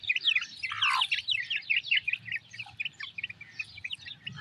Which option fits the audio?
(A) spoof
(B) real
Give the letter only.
B